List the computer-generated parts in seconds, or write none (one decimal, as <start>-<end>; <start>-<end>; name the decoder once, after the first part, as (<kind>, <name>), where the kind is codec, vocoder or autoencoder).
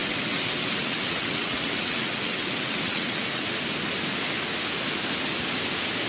0.0-3.6 (vocoder, WaveNeXt)